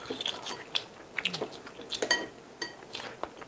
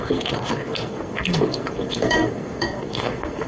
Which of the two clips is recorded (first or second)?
first